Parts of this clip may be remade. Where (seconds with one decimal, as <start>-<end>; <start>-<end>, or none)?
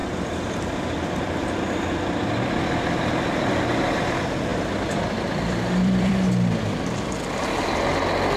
0.0-3.7; 4.5-6.1